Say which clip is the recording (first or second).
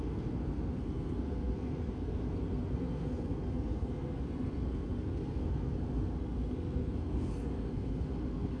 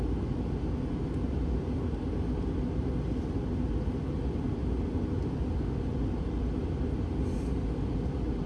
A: second